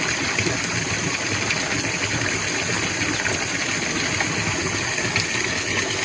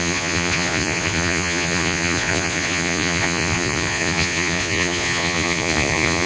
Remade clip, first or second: second